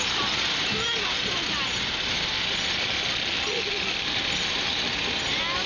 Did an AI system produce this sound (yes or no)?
no